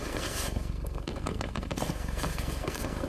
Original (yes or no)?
no